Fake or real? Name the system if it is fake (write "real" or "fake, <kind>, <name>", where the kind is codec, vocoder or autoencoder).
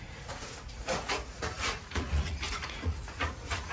fake, vocoder, Vocos